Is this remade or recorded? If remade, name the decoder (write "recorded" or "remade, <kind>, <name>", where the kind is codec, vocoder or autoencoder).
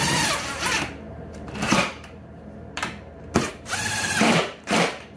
remade, vocoder, BigVGAN v2